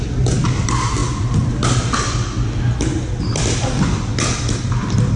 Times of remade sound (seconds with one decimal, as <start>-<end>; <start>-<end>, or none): none

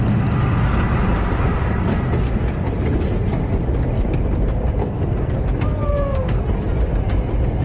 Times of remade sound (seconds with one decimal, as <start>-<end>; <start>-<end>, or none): 4.8-5.3; 5.7-6.5

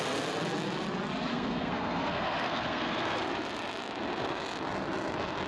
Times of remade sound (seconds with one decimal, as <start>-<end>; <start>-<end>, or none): 1.3-3.3